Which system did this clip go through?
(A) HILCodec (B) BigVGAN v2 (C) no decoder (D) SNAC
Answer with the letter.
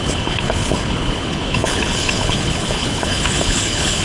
A